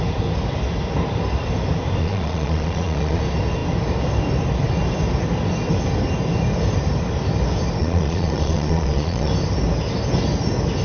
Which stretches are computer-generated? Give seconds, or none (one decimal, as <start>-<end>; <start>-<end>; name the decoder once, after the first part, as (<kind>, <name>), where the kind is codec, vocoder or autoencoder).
2.0-3.2 (vocoder, Vocos); 7.8-9.3